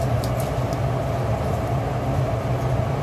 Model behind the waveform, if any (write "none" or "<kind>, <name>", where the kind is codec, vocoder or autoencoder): none